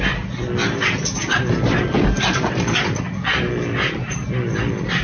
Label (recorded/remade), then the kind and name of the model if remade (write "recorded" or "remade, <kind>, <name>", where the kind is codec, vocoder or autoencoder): recorded